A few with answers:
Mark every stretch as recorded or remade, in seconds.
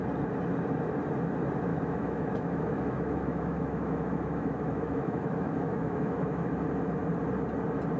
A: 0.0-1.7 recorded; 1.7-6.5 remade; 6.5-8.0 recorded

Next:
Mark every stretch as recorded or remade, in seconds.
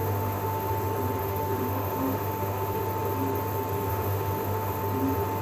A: 0.0-0.7 remade; 0.7-1.2 recorded; 1.2-2.8 remade; 2.8-3.9 recorded; 3.9-4.8 remade; 4.8-5.4 recorded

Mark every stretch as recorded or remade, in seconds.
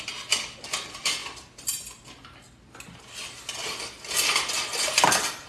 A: 0.0-5.5 recorded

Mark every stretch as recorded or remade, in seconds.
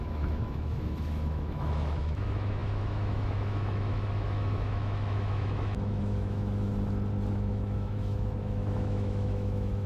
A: 0.0-6.7 remade; 6.7-7.3 recorded; 7.3-9.9 remade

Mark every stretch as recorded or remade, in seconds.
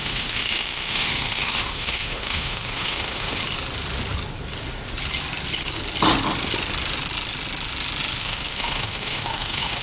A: 0.0-3.4 remade; 3.4-8.2 recorded; 8.2-9.8 remade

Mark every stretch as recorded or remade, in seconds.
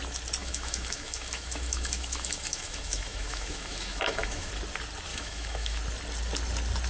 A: 0.0-0.4 recorded; 0.4-4.5 remade; 4.5-5.1 recorded; 5.1-5.8 remade; 5.8-6.9 recorded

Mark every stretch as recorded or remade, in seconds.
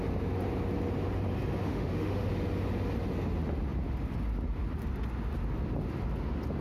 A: 0.0-1.6 recorded; 1.6-2.3 remade; 2.3-6.6 recorded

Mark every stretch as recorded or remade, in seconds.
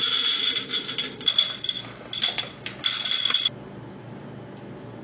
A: 0.0-5.0 recorded